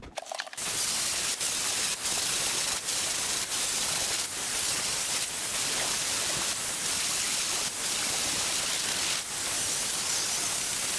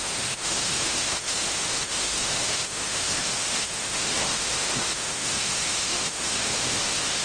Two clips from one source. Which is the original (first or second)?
first